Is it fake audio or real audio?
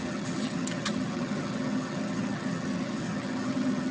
fake